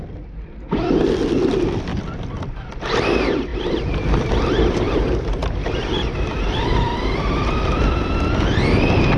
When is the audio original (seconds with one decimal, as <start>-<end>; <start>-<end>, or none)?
0.0-3.5; 7.8-9.2